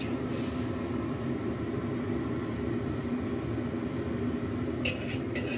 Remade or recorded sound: recorded